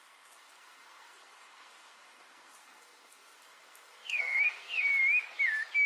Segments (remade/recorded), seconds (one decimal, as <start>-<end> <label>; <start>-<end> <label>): 0.0-4.9 remade; 4.9-5.9 recorded